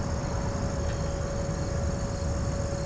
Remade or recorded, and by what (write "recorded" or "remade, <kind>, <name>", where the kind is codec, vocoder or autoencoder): recorded